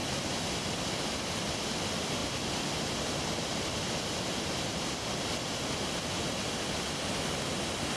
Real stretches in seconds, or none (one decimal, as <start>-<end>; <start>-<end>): 0.0-8.0